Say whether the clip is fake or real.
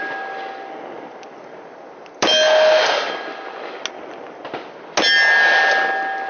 real